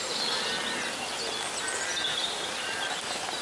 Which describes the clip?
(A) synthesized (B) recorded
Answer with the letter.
B